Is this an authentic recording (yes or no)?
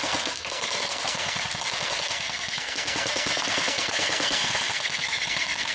no